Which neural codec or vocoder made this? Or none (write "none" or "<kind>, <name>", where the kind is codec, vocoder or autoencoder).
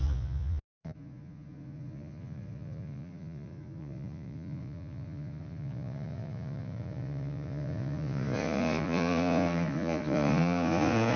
vocoder, Vocos